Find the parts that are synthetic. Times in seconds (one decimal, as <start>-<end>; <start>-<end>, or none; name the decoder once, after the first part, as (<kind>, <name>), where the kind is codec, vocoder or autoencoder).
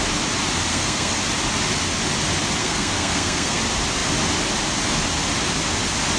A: 0.7-1.2 (codec, SNAC); 2.6-3.6